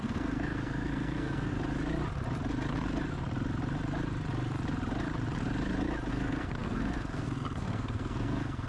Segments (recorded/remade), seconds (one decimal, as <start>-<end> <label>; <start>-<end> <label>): 0.0-1.5 remade; 1.5-6.1 recorded; 6.1-8.7 remade